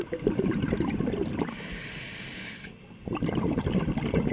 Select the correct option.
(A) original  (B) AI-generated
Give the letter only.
A